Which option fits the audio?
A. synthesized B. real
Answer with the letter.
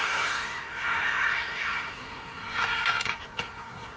A